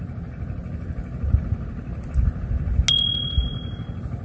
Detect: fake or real real